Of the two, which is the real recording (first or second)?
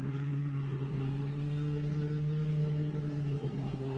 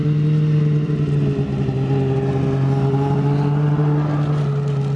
second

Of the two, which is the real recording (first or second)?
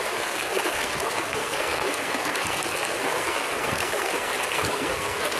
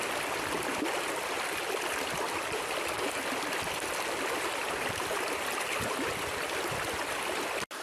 second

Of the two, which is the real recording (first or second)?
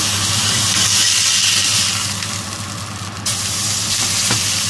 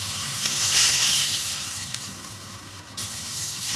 first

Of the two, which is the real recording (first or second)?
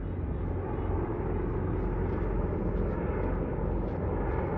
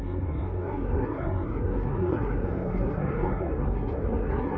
first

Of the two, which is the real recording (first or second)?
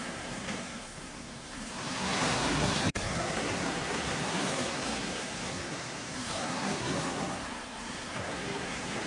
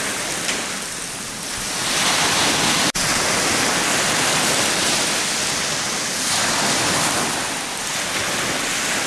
second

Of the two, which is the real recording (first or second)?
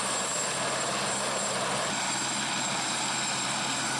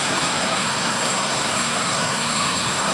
first